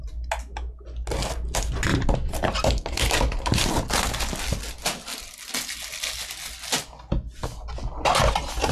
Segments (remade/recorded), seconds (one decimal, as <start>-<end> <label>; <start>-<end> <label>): 0.0-1.9 recorded; 1.9-3.7 remade; 3.7-8.7 recorded